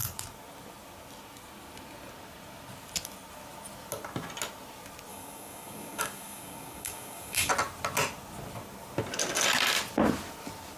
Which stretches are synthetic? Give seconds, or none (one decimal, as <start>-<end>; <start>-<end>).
5.1-7.5